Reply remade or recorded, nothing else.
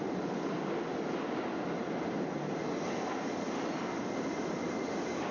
recorded